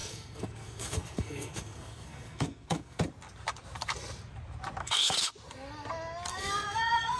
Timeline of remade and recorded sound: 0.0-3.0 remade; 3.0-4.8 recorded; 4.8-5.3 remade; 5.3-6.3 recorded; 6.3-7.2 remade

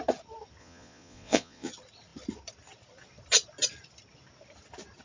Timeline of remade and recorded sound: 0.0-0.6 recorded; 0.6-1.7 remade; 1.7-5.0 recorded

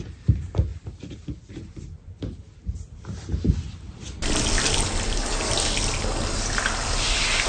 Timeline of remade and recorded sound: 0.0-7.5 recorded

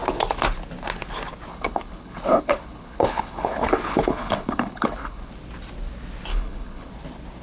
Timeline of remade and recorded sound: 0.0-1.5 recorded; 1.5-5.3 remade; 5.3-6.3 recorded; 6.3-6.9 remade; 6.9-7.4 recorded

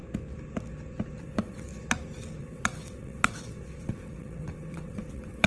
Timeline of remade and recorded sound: 0.0-1.2 recorded; 1.2-1.7 remade; 1.7-2.4 recorded; 2.4-5.5 remade